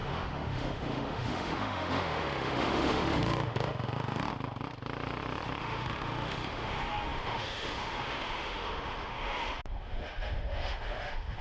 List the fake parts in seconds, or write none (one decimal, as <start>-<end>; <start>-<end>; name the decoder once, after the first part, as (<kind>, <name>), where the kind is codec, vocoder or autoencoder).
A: 0.0-4.3 (autoencoder, DAC-VAE); 5.6-11.4

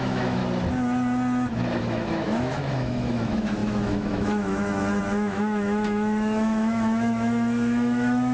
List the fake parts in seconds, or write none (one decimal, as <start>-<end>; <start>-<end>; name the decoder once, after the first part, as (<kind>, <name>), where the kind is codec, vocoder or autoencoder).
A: 0.0-0.4 (autoencoder, DAC-VAE); 1.8-8.3

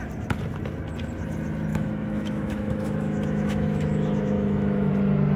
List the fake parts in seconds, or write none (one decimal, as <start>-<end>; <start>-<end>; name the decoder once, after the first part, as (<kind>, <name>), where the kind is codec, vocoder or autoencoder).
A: 1.7-4.9 (autoencoder, DAC-VAE)

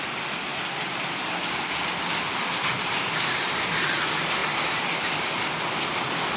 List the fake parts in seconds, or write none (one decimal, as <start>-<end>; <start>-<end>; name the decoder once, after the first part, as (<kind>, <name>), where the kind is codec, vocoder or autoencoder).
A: none

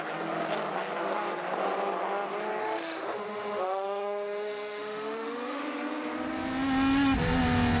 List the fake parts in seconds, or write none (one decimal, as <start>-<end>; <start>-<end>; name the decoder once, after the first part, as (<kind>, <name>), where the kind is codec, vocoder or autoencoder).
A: 2.6-5.6 (autoencoder, DAC-VAE)

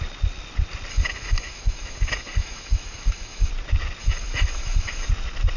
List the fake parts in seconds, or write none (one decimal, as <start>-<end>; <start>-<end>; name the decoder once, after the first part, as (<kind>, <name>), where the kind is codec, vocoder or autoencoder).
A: 0.9-3.5 (autoencoder, DAC-VAE); 4.0-5.1

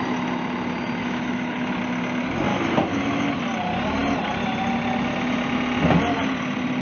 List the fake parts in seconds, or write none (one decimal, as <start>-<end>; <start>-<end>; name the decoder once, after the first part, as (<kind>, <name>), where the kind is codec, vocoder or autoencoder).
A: 1.0-1.8 (autoencoder, DAC-VAE); 2.5-3.4

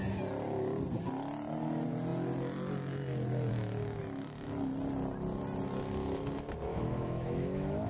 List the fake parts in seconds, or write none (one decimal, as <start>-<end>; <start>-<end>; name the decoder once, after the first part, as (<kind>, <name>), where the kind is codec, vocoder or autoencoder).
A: 6.7-7.9 (autoencoder, DAC-VAE)